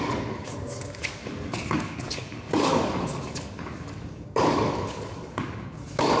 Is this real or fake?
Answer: fake